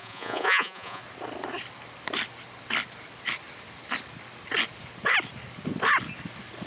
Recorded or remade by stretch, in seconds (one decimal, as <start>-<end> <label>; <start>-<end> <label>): 0.0-1.0 remade; 1.0-6.7 recorded